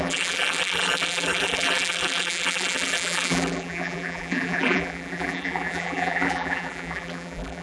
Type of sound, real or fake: fake